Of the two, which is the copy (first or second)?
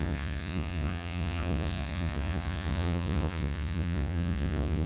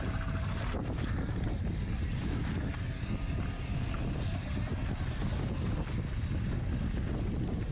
first